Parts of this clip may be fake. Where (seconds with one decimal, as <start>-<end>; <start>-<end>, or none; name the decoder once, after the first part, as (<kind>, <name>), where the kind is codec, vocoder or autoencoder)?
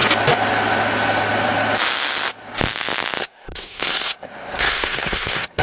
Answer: 3.2-5.6 (codec, SNAC)